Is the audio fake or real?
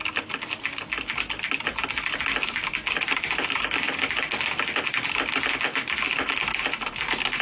real